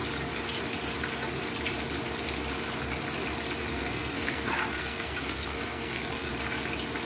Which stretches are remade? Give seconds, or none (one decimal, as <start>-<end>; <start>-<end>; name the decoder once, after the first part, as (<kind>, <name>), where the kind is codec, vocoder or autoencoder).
3.7-6.3 (codec, SNAC)